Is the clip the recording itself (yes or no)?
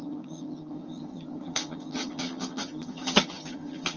no